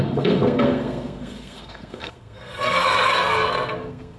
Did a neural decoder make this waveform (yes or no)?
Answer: yes